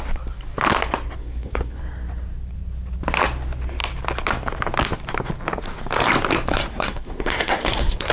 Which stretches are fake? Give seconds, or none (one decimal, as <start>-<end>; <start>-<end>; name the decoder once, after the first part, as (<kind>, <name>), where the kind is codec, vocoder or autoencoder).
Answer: 1.2-1.8 (codec, SNAC); 6.5-8.1